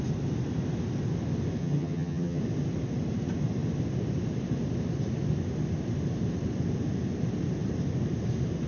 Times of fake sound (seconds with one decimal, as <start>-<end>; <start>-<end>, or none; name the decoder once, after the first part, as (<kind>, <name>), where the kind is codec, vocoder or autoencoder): 1.6-2.4 (vocoder, HiFi-GAN)